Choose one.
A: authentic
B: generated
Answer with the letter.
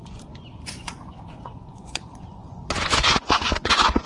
B